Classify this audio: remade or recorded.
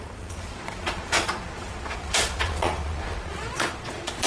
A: remade